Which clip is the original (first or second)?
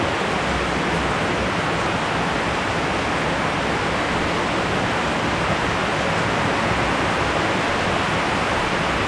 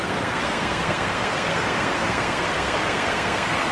first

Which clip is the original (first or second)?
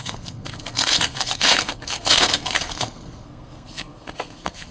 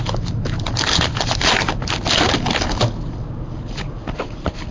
second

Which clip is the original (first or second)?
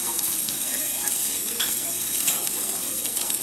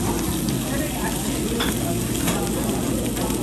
second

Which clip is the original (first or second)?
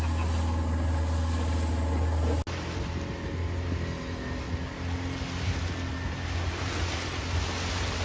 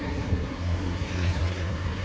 first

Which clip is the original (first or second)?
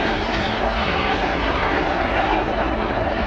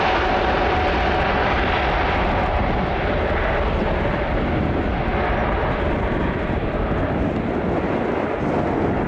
second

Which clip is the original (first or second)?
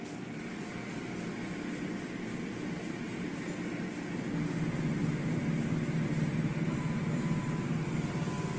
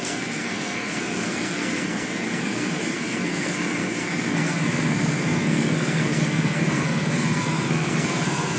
first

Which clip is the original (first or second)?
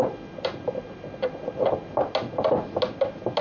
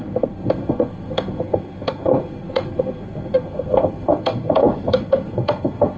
first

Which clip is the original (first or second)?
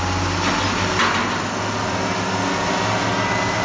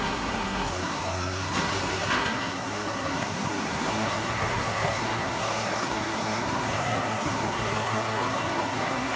first